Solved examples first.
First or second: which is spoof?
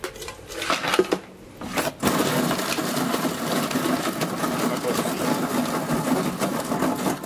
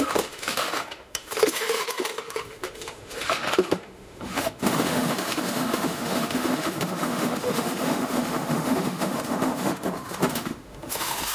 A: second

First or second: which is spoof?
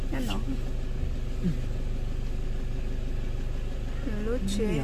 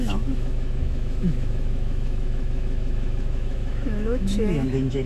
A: second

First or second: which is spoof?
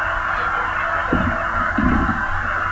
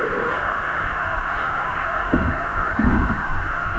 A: second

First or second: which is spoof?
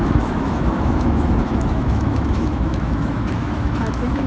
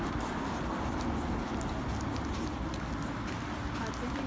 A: first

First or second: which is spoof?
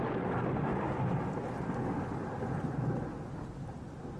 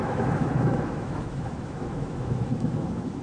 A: second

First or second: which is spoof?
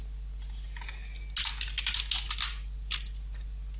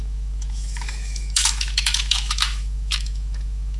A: second